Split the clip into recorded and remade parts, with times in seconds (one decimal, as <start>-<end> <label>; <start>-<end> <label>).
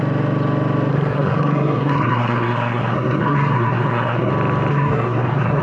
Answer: 0.0-0.9 recorded; 0.9-4.3 remade; 4.3-4.7 recorded; 4.7-5.6 remade